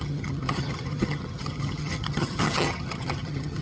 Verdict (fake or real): fake